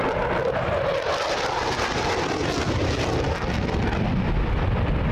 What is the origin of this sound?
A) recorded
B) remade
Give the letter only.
A